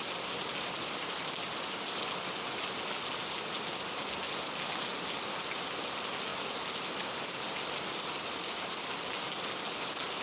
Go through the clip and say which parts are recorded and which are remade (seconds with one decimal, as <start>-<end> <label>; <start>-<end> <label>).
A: 0.0-10.2 recorded